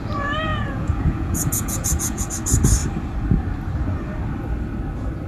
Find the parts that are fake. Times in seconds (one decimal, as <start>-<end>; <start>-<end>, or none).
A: 0.5-2.3